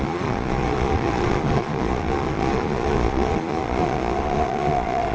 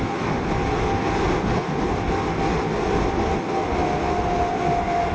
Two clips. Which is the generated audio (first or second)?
first